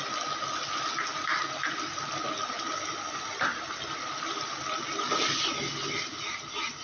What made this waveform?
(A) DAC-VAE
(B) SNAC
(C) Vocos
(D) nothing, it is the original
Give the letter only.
D